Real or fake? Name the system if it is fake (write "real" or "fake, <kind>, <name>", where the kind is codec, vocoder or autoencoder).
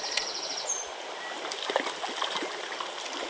real